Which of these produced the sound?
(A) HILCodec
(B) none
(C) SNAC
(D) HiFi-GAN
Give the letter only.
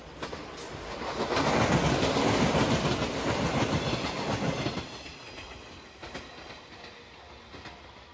B